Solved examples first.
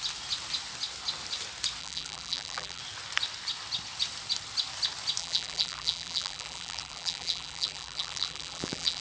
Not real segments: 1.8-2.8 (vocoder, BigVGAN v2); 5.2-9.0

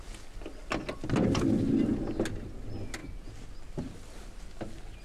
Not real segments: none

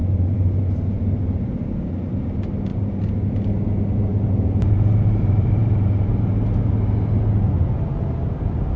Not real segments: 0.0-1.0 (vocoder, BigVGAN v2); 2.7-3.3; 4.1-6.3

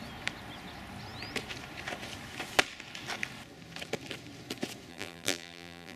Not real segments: 4.9-6.0 (vocoder, BigVGAN v2)

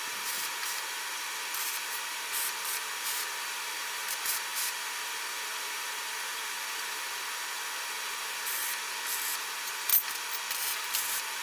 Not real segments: 0.0-8.6 (vocoder, BigVGAN v2); 9.4-9.9; 10.6-11.4

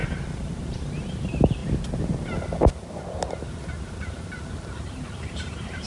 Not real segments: 0.0-1.6 (vocoder, BigVGAN v2); 4.1-5.9